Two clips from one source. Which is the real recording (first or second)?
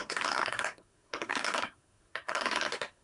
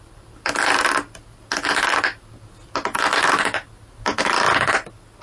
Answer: second